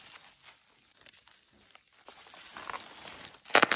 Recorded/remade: recorded